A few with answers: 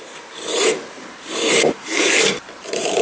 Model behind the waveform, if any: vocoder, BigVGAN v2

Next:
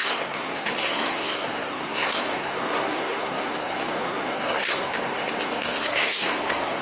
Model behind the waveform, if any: codec, SNAC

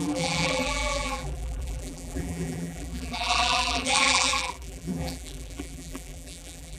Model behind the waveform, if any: vocoder, BigVGAN v2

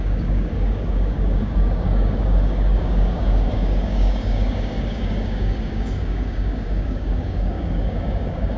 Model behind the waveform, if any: codec, DAC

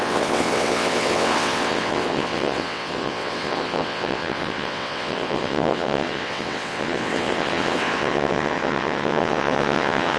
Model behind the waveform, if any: vocoder, WaveNeXt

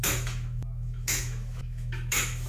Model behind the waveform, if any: autoencoder, DAC-VAE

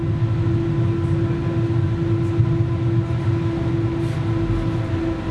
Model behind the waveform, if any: none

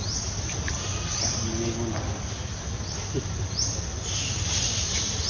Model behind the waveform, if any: none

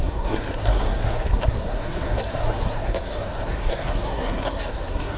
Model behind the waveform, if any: codec, SNAC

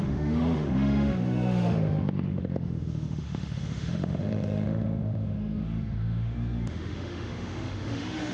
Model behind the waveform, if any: autoencoder, DAC-VAE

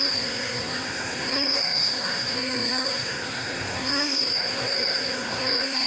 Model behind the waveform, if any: codec, SNAC